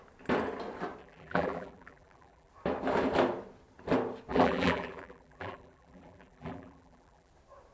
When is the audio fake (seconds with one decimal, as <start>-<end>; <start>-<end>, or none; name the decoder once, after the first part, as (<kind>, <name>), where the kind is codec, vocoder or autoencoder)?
1.0-2.5 (vocoder, BigVGAN v2); 4.3-7.3